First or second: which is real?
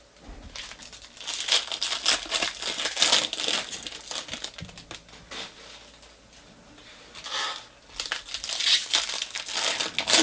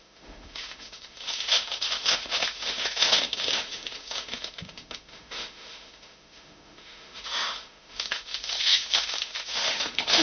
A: first